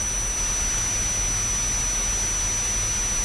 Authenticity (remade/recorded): recorded